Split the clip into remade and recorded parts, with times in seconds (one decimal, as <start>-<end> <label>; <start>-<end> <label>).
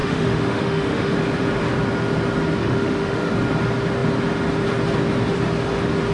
0.0-1.1 remade; 1.1-2.6 recorded; 2.6-3.3 remade; 3.3-6.1 recorded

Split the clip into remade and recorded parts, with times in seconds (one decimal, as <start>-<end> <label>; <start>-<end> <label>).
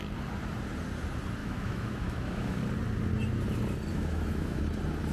0.0-1.4 recorded; 1.4-2.6 remade; 2.6-3.9 recorded; 3.9-4.6 remade; 4.6-5.1 recorded